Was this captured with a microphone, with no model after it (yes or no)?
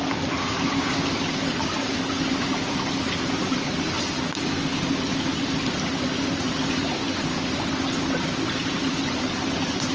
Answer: yes